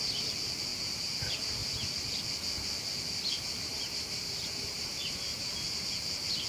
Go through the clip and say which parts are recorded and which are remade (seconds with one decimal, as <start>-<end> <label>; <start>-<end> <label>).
0.0-3.7 recorded; 3.7-5.5 remade; 5.5-6.5 recorded